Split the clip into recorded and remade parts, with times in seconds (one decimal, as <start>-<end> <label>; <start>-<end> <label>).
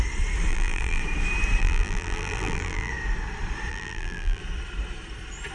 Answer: 0.0-0.5 recorded; 0.5-1.0 remade; 1.0-1.6 recorded; 1.6-2.9 remade; 2.9-3.7 recorded; 3.7-4.4 remade; 4.4-5.5 recorded